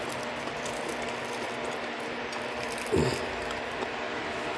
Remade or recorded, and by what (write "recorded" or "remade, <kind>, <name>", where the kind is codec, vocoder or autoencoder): recorded